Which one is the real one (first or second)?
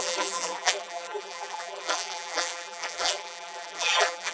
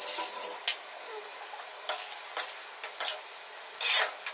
second